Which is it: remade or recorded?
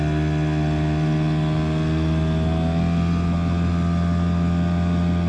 recorded